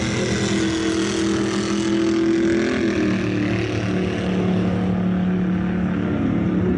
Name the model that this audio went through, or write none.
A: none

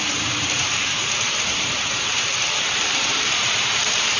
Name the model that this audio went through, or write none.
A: vocoder, BigVGAN v2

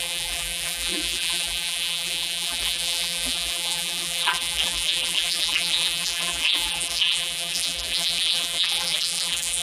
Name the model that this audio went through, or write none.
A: vocoder, BigVGAN v2